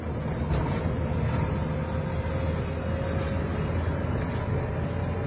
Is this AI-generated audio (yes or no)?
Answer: no